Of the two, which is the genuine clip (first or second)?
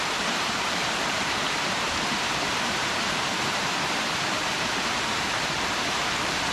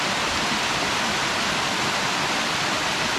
second